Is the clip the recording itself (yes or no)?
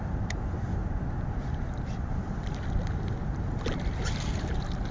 yes